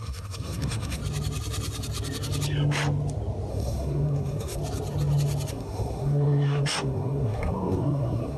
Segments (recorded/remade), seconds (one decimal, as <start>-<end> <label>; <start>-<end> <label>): 0.0-1.0 remade; 1.0-3.5 recorded; 3.5-4.6 remade; 4.6-5.5 recorded; 5.5-8.4 remade